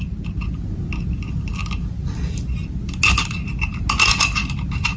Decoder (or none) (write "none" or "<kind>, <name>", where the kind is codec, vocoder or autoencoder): none